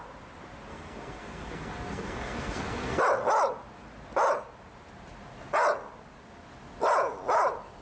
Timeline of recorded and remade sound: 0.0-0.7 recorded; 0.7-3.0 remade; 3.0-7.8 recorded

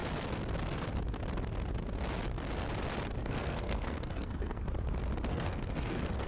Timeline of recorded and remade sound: 0.0-3.2 recorded; 3.2-4.6 remade; 4.6-5.3 recorded; 5.3-6.3 remade

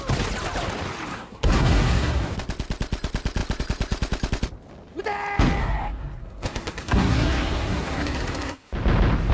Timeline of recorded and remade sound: 0.0-1.1 recorded; 1.1-2.3 remade; 2.3-5.6 recorded; 5.6-8.7 remade; 8.7-9.3 recorded

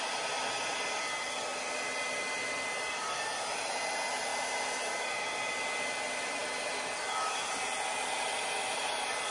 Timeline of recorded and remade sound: 0.0-9.3 recorded

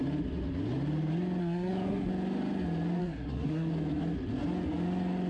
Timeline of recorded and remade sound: 0.0-1.4 recorded; 1.4-2.1 remade; 2.1-3.0 recorded; 3.0-3.7 remade; 3.7-5.3 recorded

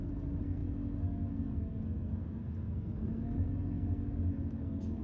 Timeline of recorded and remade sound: 0.0-5.0 remade

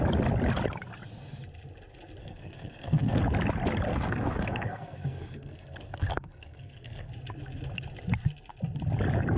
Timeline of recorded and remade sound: 0.0-2.2 recorded; 2.2-3.2 remade; 3.2-3.9 recorded; 3.9-7.1 remade; 7.1-9.4 recorded